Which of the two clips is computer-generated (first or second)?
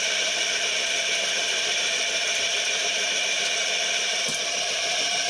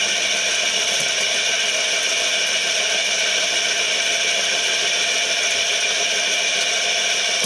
first